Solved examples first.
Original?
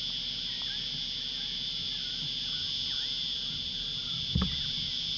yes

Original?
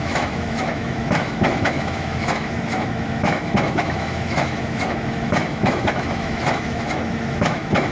no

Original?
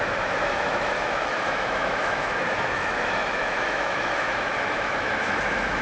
no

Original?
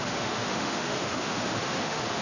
no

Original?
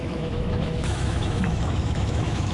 no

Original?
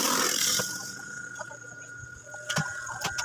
yes